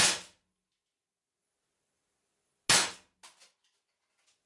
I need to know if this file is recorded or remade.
recorded